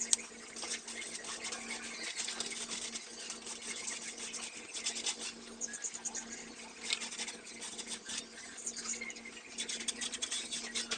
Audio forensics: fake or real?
real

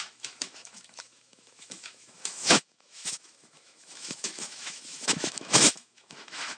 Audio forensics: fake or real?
fake